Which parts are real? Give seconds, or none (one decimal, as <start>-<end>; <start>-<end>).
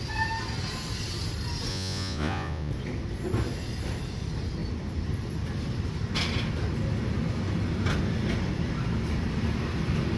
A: 0.0-1.7; 2.7-10.2